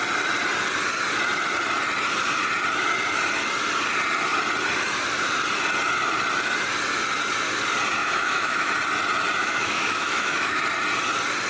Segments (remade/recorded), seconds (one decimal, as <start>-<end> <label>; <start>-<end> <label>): 0.0-8.0 recorded; 8.0-8.7 remade; 8.7-9.4 recorded; 9.4-10.6 remade; 10.6-11.5 recorded